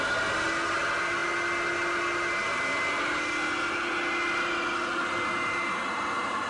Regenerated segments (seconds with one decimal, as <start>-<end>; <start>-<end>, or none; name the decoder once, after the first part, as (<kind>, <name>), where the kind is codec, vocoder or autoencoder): none